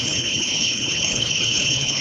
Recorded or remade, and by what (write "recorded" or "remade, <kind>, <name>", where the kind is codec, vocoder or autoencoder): remade, codec, HILCodec